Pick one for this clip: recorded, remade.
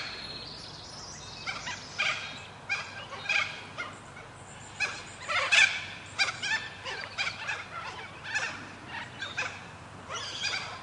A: recorded